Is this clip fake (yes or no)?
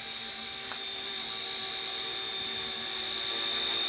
no